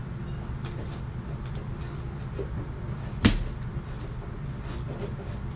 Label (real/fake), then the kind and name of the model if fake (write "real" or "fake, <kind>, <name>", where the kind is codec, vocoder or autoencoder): real